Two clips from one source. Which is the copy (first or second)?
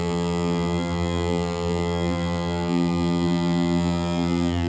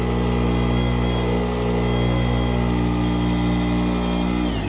first